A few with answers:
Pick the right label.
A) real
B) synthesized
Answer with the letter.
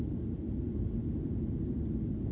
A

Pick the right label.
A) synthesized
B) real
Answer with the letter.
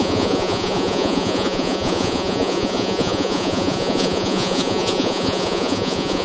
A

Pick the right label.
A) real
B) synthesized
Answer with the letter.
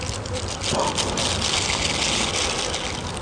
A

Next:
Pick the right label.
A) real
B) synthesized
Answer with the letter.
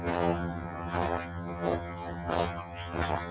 B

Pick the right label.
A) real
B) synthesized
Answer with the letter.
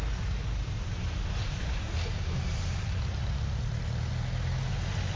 A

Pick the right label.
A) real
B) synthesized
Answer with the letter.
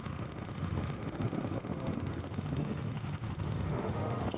B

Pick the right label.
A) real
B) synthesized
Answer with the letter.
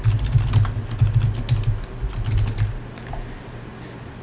A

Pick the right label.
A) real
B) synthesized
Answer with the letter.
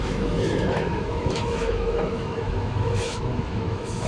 B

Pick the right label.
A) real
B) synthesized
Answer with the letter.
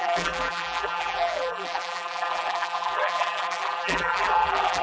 B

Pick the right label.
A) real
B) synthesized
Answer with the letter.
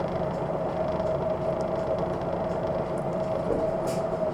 B